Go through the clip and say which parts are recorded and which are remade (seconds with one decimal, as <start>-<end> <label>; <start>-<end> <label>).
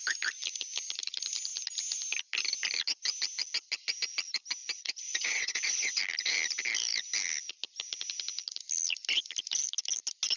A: 0.0-4.6 recorded; 4.6-6.0 remade; 6.0-10.4 recorded